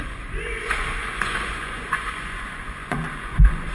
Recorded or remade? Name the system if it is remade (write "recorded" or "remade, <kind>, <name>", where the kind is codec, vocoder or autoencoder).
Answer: remade, vocoder, Vocos